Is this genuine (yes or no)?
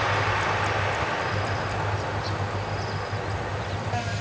yes